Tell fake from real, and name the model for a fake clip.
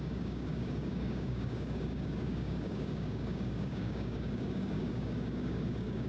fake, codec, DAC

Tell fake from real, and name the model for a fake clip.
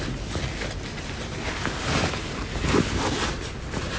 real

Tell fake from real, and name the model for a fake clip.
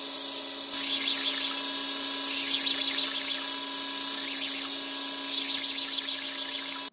real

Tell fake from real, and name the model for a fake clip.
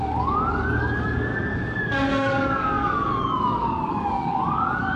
fake, codec, DAC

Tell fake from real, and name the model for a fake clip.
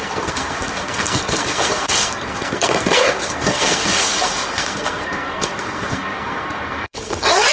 fake, codec, SNAC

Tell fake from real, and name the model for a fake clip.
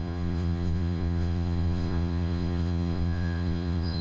fake, vocoder, Vocos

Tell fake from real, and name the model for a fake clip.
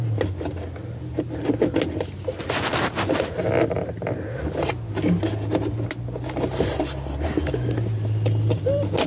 real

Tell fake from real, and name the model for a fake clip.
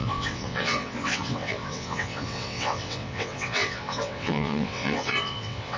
fake, vocoder, WaveNeXt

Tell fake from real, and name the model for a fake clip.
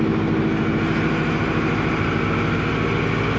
real